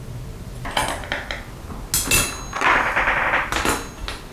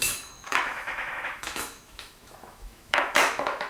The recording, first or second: first